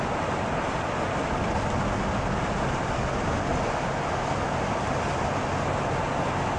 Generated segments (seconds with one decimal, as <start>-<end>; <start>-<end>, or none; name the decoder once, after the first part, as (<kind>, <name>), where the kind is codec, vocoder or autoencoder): none